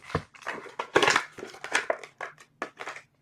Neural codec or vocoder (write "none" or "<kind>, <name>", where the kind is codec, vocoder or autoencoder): none